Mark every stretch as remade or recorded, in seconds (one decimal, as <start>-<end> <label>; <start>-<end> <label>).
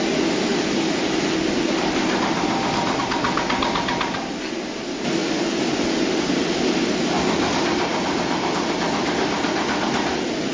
0.0-0.5 recorded; 0.5-3.0 remade; 3.0-7.9 recorded; 7.9-10.5 remade